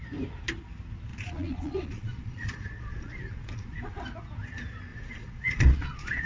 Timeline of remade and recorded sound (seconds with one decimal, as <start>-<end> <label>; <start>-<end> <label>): 0.0-1.1 recorded; 1.1-4.0 remade; 4.0-4.9 recorded; 4.9-6.3 remade